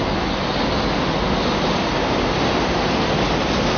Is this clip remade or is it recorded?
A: recorded